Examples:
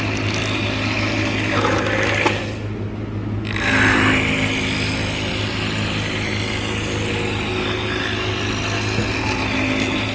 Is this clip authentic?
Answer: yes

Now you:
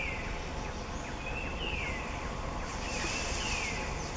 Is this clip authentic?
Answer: yes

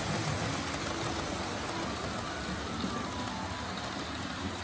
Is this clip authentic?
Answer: yes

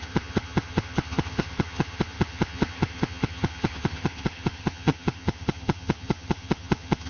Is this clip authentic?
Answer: no